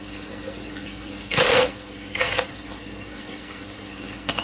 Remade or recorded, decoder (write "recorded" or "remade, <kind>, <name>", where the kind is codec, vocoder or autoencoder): remade, codec, SNAC